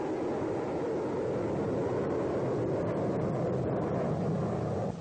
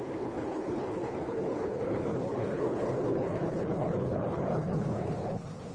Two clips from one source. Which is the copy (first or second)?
second